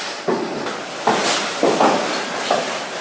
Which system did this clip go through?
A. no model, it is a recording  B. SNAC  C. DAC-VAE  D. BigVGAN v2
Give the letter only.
A